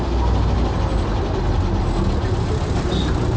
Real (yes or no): yes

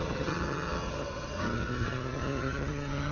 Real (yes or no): no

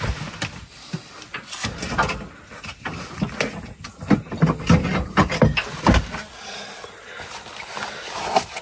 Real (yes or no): yes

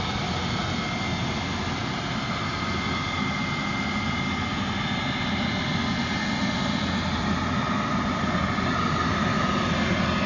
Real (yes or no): yes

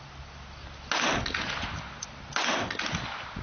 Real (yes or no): yes